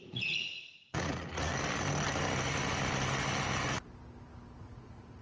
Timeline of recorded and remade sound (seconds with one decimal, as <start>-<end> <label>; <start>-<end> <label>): 0.0-1.5 remade; 1.5-4.6 recorded; 4.6-5.2 remade